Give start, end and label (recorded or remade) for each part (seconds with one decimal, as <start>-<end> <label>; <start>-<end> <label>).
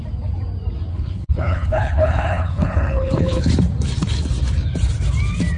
0.0-0.9 recorded; 0.9-3.5 remade; 3.5-5.6 recorded